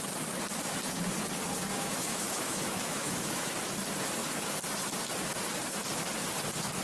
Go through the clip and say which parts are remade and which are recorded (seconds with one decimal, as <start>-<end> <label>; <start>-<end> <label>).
0.0-1.7 recorded; 1.7-3.5 remade; 3.5-6.8 recorded